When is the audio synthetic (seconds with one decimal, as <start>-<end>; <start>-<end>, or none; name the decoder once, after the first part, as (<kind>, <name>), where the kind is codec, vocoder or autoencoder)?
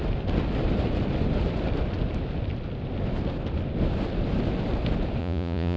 5.2-5.8 (vocoder, Vocos)